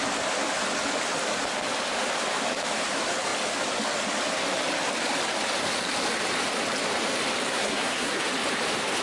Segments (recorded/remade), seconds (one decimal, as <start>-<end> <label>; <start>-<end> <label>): 0.0-7.5 recorded; 7.5-8.2 remade; 8.2-9.0 recorded